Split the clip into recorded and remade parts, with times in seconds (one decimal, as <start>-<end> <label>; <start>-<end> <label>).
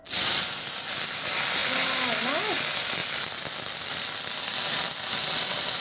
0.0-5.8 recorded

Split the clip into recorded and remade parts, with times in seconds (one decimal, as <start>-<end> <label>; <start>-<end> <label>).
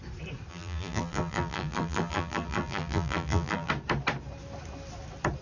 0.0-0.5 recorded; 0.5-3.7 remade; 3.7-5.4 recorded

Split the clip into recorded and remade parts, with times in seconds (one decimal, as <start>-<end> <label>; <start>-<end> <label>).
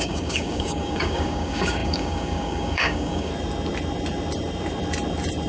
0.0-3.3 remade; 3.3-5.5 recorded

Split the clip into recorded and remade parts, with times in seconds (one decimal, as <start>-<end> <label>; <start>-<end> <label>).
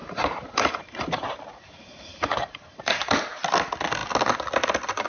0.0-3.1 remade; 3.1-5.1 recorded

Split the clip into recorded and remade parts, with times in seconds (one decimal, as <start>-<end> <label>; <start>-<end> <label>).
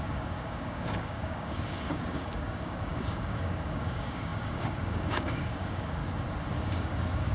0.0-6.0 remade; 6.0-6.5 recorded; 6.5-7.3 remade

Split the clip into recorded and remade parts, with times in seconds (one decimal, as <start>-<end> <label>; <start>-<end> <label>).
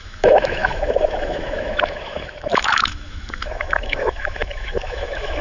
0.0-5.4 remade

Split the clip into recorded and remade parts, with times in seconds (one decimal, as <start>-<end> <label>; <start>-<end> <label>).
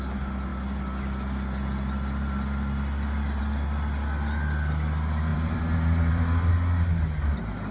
0.0-5.3 recorded; 5.3-6.5 remade; 6.5-7.7 recorded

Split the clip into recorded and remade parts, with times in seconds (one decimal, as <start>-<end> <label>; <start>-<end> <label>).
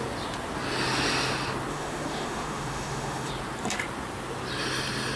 0.0-1.7 recorded; 1.7-3.3 remade; 3.3-5.2 recorded